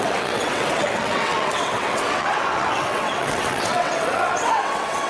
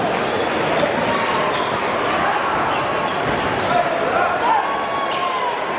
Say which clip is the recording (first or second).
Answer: second